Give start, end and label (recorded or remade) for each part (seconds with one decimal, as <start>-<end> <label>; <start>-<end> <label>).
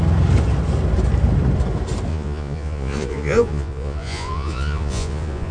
0.0-2.1 recorded; 2.1-5.5 remade